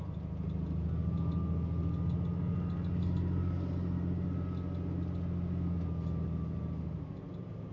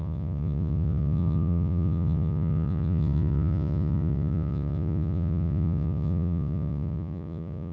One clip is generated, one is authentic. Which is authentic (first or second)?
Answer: first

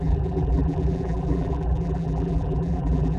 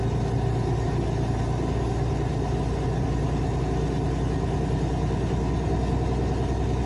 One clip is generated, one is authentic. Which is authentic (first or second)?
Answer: second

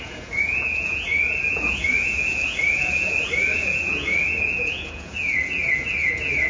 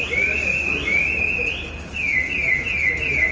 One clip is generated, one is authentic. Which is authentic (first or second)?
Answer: second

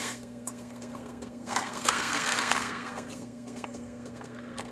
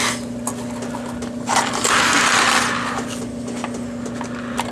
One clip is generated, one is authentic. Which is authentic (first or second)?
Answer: second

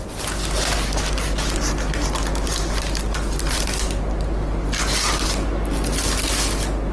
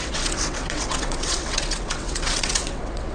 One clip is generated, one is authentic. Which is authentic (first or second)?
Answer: first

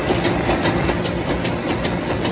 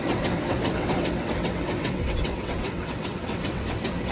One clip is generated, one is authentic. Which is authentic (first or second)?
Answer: first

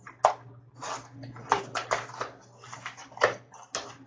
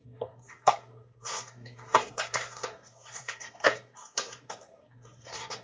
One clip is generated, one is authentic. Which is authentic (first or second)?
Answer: first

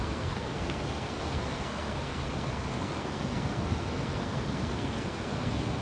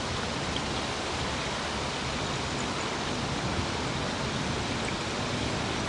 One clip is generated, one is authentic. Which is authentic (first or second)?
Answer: second